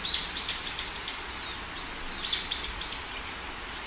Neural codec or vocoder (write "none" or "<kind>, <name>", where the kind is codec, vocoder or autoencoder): none